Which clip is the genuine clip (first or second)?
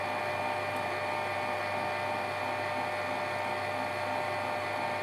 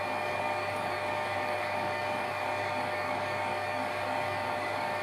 first